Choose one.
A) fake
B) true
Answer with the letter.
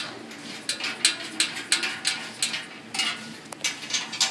B